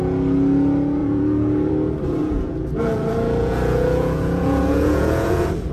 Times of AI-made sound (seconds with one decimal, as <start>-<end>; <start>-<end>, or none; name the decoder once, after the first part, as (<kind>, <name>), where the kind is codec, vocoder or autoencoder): 1.0-1.7 (vocoder, Vocos); 2.2-5.7